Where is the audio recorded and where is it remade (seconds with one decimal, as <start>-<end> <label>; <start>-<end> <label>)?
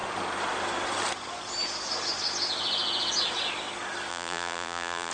0.0-4.1 recorded; 4.1-5.1 remade